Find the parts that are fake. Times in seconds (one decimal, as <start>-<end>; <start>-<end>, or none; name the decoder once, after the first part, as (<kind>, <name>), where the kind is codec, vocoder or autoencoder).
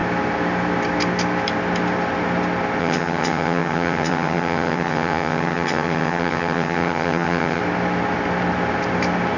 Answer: 2.8-7.6 (vocoder, HiFi-GAN)